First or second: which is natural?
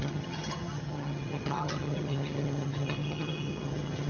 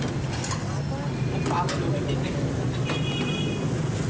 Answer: second